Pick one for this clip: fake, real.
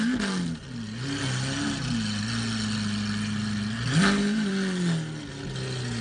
real